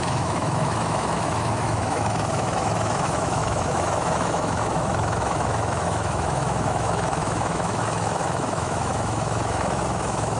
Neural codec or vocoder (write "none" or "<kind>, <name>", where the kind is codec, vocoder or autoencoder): autoencoder, DAC-VAE